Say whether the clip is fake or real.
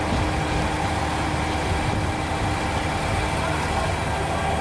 real